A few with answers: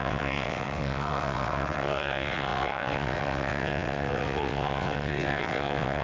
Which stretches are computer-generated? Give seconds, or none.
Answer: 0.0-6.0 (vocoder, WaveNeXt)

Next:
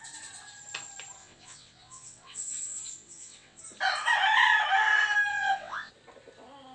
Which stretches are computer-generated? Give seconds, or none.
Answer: 1.2-3.6 (vocoder, WaveNeXt); 5.3-5.9

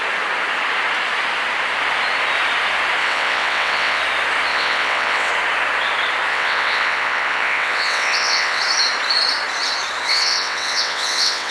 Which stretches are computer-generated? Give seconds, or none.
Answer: 3.0-4.0 (vocoder, WaveNeXt); 4.5-5.3; 6.3-8.6; 10.1-11.5

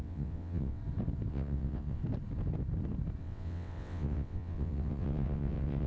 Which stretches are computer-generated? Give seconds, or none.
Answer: 0.0-0.8 (vocoder, WaveNeXt); 1.3-2.0; 3.2-5.9